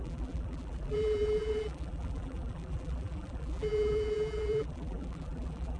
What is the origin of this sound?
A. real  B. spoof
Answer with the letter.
B